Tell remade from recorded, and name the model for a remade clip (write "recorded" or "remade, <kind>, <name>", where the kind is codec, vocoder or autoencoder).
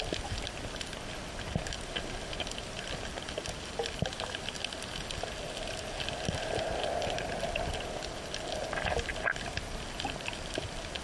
recorded